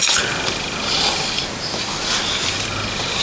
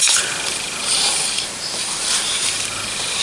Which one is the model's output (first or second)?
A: second